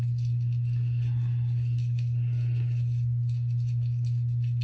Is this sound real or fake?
real